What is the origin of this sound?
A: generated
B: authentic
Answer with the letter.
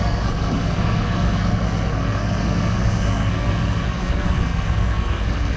A